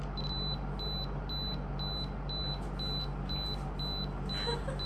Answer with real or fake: real